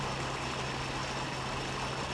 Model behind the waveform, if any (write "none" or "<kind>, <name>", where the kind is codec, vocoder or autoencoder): none